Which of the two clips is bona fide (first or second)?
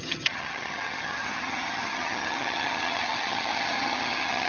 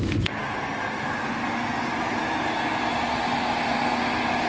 second